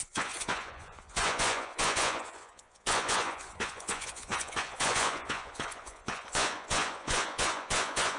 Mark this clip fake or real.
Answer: fake